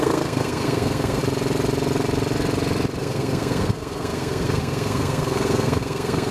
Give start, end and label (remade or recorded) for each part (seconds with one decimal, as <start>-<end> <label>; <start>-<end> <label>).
0.0-1.2 remade; 1.2-3.0 recorded; 3.0-6.3 remade